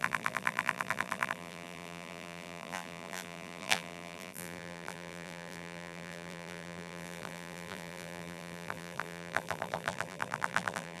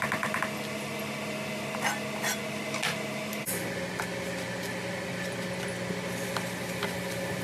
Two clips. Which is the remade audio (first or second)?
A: first